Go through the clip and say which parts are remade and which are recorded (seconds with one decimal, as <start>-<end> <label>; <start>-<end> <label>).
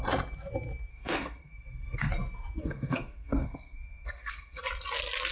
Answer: 0.0-0.9 recorded; 0.9-2.1 remade; 2.1-2.6 recorded; 2.6-4.6 remade; 4.6-5.3 recorded